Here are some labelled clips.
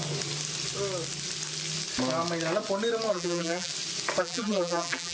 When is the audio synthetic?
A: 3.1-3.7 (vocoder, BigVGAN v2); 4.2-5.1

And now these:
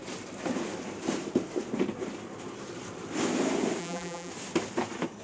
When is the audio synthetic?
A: 3.8-4.3 (vocoder, BigVGAN v2)

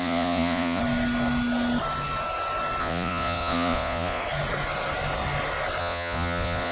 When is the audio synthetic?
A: 0.0-0.8 (vocoder, Vocos); 2.8-4.2; 5.8-6.7

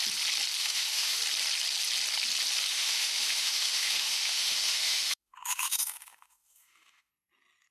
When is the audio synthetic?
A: 0.6-1.2 (autoencoder, DAC-VAE); 2.7-7.1

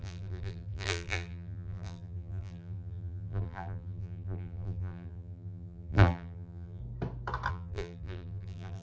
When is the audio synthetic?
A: 0.0-6.8 (vocoder, BigVGAN v2); 7.5-8.8

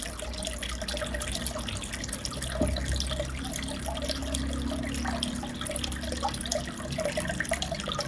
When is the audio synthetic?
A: none

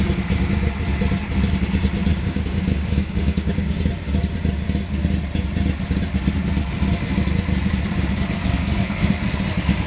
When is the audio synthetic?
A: 2.1-3.7 (codec, DAC); 8.4-9.1

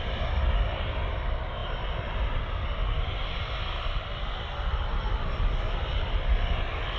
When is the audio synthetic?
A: none